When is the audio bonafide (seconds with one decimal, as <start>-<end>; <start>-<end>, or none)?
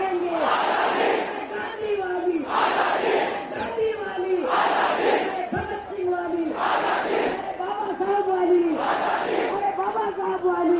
0.0-10.8